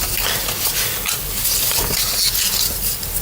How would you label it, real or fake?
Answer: real